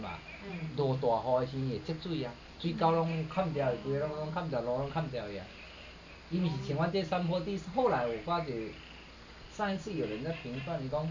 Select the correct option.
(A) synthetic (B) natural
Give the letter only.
B